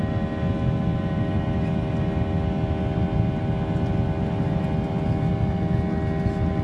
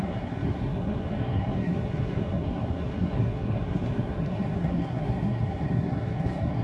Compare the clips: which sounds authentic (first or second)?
first